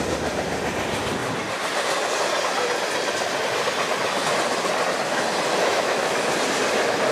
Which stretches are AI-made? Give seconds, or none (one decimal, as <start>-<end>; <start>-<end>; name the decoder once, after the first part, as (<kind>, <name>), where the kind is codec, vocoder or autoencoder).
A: 5.5-6.3 (autoencoder, DAC-VAE)